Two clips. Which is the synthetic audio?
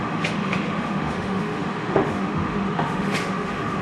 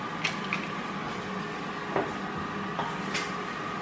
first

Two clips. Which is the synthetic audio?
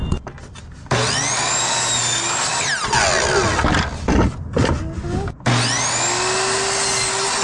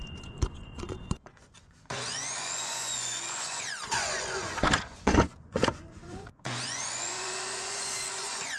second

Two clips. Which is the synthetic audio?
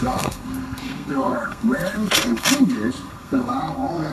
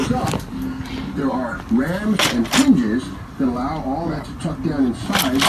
first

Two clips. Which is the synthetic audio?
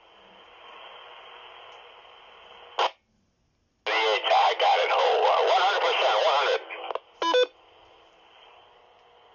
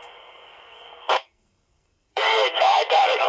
second